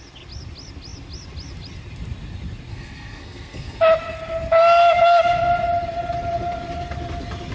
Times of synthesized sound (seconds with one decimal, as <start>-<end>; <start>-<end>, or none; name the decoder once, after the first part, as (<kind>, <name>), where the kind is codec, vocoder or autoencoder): 2.7-3.8 (codec, SNAC)